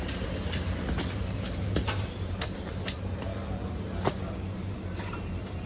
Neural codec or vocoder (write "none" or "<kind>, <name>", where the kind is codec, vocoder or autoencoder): vocoder, BigVGAN v2